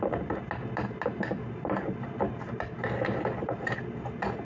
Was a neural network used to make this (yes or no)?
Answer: no